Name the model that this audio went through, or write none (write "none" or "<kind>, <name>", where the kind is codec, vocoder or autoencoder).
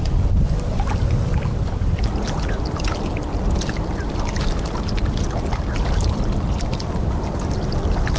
none